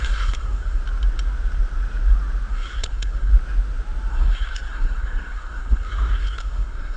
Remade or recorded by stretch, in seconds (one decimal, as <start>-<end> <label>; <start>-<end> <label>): 0.0-0.8 remade; 0.8-2.5 recorded; 2.5-3.3 remade; 3.3-4.1 recorded; 4.1-7.0 remade